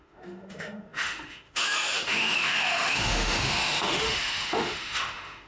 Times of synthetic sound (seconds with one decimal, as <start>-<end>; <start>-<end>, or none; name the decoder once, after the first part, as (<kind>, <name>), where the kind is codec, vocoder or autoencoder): 0.0-5.5 (autoencoder, DAC-VAE)